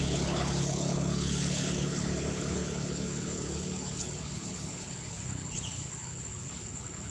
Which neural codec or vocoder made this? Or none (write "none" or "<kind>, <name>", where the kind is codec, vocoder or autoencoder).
codec, HILCodec